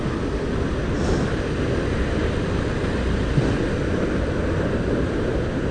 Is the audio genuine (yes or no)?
yes